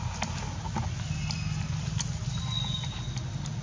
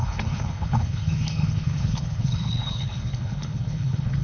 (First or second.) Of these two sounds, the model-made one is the second